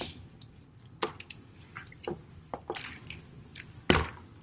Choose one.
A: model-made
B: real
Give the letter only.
B